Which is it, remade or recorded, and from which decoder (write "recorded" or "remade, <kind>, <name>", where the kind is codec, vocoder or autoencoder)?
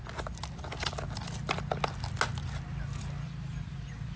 recorded